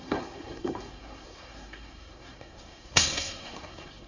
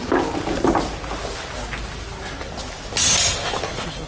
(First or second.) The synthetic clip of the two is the first